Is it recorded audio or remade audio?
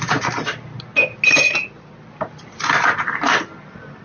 recorded